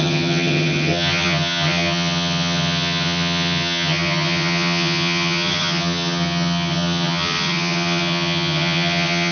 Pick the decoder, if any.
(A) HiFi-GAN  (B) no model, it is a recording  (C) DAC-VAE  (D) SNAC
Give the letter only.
A